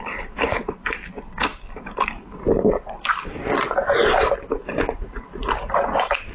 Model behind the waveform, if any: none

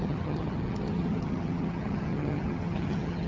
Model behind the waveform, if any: vocoder, HiFi-GAN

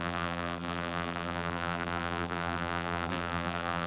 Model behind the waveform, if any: vocoder, BigVGAN v2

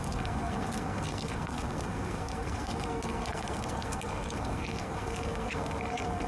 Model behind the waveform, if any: codec, SNAC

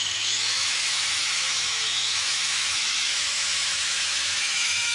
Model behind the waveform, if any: autoencoder, DAC-VAE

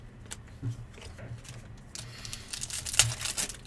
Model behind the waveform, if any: none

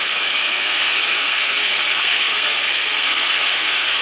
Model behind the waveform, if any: codec, SNAC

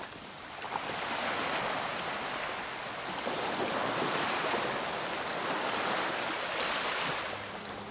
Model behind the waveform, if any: none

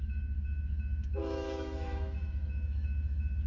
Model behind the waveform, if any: autoencoder, DAC-VAE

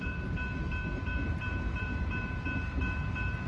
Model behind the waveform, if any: vocoder, BigVGAN v2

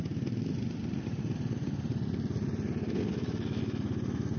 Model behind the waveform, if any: none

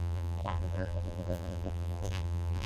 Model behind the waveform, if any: vocoder, BigVGAN v2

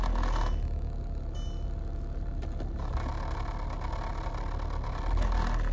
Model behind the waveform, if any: none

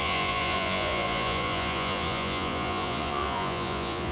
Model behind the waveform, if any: vocoder, Vocos